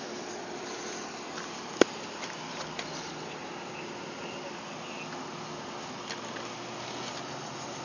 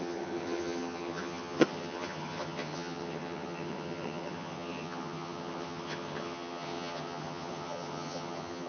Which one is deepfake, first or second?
second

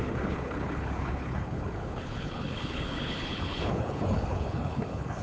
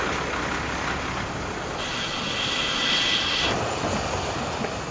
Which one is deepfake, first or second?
first